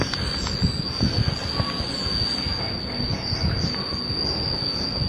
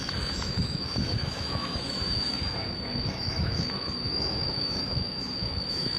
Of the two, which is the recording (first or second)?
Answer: first